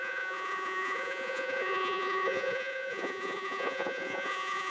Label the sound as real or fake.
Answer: fake